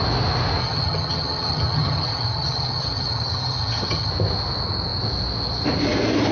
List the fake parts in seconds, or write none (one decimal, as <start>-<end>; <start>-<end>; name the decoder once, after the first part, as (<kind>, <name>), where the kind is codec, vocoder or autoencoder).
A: 0.6-4.1 (vocoder, HiFi-GAN)